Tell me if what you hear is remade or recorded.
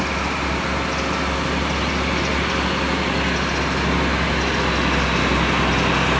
recorded